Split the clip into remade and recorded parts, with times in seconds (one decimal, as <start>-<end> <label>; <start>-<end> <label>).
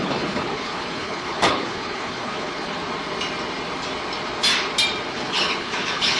0.0-2.8 remade; 2.8-5.1 recorded; 5.1-6.2 remade